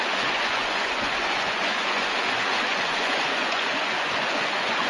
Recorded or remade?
remade